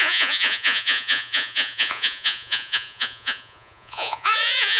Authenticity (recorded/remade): remade